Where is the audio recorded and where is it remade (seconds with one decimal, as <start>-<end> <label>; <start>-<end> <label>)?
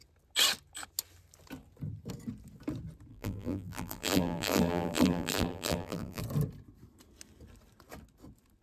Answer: 0.0-3.1 recorded; 3.1-6.2 remade; 6.2-8.6 recorded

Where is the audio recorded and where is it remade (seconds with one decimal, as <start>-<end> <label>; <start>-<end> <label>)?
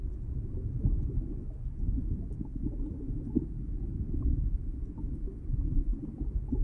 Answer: 0.0-6.6 recorded